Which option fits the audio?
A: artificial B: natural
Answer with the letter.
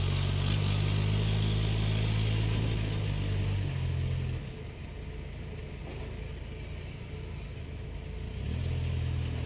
B